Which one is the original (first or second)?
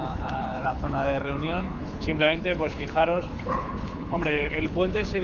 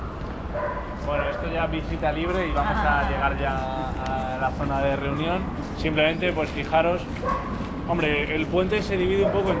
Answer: second